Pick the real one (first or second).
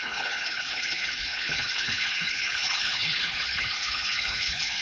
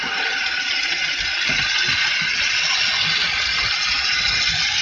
second